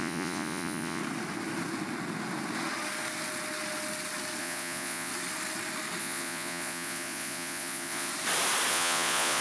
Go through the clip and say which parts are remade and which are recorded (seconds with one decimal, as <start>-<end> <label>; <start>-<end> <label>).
0.0-1.0 remade; 1.0-4.4 recorded; 4.4-5.1 remade; 5.1-6.0 recorded; 6.0-8.1 remade; 8.1-8.7 recorded; 8.7-9.4 remade